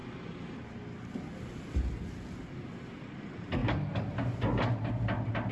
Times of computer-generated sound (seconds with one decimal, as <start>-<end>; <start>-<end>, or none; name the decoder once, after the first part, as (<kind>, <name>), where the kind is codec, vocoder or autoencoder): none